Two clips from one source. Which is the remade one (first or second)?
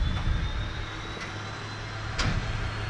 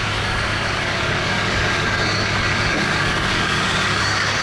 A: second